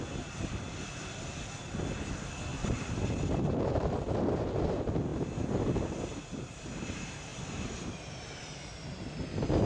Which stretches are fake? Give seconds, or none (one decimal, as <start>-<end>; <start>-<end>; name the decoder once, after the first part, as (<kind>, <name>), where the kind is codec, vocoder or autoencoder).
2.5-3.9 (vocoder, BigVGAN v2); 7.3-9.1